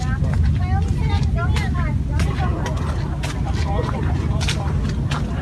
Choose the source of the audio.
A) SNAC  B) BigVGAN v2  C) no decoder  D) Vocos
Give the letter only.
C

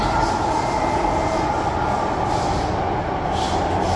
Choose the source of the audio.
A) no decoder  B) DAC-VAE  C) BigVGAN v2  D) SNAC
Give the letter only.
A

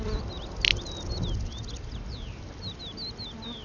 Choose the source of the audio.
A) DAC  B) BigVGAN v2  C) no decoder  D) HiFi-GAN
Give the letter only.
C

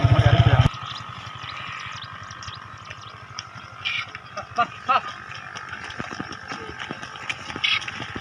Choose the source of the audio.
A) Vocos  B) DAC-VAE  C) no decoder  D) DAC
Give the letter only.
C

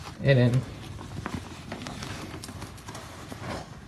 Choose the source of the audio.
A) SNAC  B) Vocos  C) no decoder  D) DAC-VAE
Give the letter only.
C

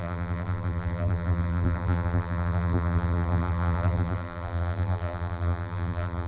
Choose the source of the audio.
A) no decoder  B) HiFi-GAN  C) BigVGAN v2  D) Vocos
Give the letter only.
C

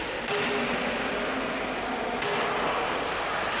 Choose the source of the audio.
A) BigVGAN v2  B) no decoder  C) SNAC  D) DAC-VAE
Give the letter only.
B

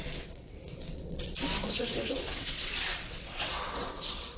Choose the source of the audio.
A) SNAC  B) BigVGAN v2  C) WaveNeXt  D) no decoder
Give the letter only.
C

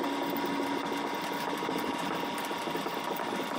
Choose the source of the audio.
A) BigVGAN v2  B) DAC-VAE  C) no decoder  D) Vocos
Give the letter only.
C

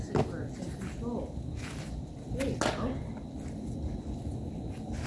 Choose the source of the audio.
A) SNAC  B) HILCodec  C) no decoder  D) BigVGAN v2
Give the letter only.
C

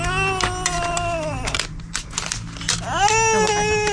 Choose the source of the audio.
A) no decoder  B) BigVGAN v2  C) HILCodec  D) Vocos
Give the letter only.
A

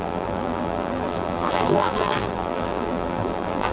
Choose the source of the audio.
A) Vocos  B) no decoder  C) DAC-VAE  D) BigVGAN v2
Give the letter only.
D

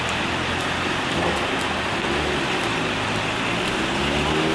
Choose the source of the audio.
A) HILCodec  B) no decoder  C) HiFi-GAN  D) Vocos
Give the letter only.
B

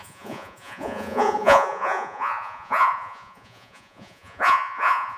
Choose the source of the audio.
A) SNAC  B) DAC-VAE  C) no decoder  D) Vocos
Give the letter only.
D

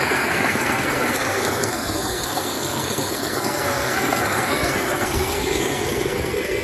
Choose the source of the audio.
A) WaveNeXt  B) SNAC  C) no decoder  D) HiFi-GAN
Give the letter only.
B